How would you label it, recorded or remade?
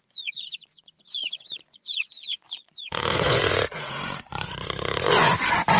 remade